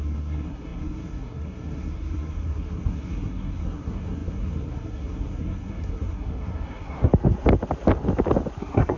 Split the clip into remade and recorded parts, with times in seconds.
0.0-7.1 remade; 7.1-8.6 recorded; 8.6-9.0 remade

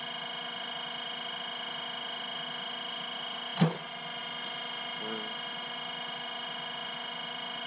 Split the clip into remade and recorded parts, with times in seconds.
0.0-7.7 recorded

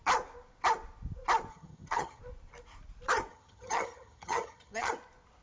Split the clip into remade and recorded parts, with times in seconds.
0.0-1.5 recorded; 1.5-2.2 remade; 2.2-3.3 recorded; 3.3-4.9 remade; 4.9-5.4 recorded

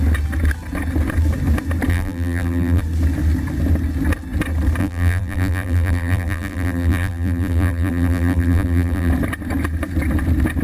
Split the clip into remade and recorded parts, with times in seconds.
0.0-1.9 recorded; 1.9-2.8 remade; 2.8-4.8 recorded; 4.8-9.1 remade; 9.1-10.6 recorded